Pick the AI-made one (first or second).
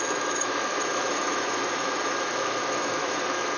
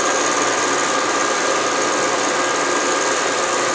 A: first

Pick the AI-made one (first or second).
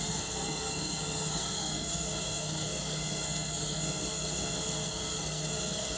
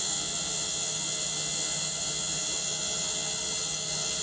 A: first